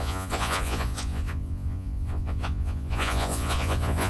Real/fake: fake